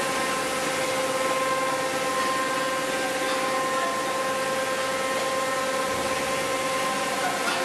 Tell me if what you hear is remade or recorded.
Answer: recorded